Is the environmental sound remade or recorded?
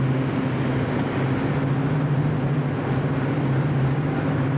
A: recorded